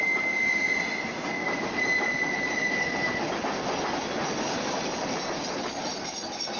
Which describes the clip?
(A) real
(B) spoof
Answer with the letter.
A